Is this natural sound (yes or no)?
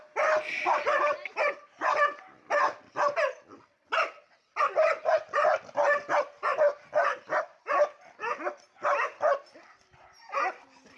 yes